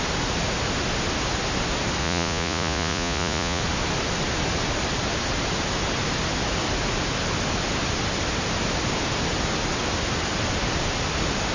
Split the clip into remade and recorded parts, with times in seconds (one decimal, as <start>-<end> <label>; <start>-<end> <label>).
0.0-2.0 recorded; 2.0-3.6 remade; 3.6-11.5 recorded